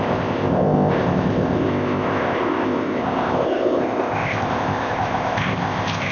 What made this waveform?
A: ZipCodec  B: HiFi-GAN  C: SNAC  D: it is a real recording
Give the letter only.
A